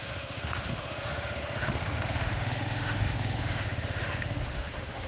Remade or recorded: remade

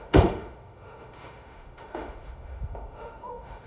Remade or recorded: remade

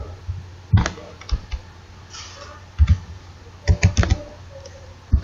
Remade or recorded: recorded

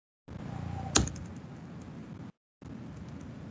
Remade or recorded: recorded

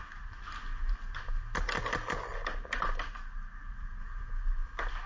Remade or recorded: recorded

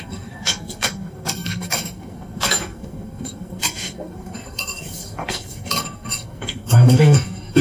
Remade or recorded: remade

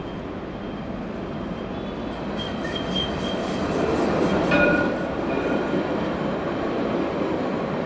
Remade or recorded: recorded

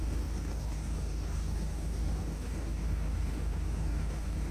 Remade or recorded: remade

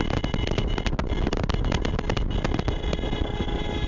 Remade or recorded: recorded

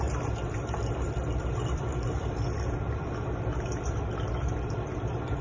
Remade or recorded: remade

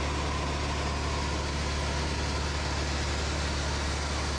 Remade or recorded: recorded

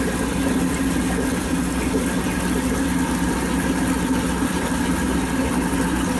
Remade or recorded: recorded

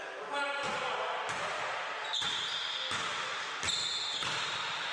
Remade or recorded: remade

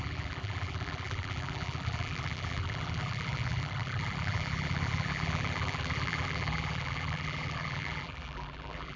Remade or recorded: remade